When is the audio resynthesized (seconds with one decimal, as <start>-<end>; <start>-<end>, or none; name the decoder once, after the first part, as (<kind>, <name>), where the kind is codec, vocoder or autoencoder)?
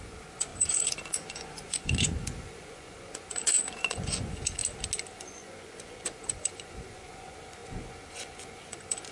0.0-4.6 (vocoder, Vocos); 5.2-9.1